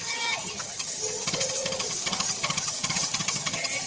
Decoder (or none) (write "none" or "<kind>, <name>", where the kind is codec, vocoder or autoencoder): vocoder, HiFi-GAN